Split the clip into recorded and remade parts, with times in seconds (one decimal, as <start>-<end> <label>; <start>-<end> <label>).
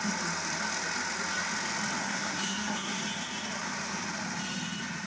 0.0-2.0 recorded; 2.0-3.0 remade; 3.0-5.1 recorded